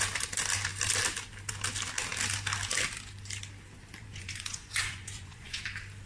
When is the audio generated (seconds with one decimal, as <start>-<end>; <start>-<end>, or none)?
4.0-5.6